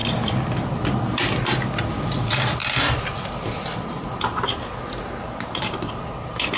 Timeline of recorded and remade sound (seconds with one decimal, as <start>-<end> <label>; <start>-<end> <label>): 0.0-2.6 recorded; 2.6-5.1 remade; 5.1-6.6 recorded